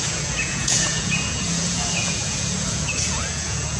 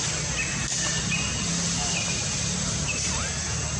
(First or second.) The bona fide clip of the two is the second